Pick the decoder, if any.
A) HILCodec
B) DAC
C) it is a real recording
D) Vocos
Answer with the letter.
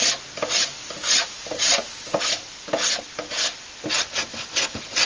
C